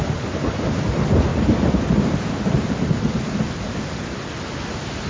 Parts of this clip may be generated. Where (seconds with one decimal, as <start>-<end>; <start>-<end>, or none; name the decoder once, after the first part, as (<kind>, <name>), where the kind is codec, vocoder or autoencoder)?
none